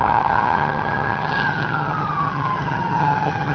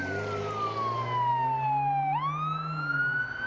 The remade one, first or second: first